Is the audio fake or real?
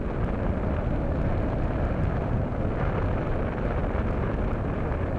real